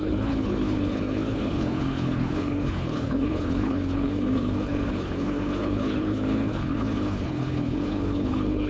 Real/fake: fake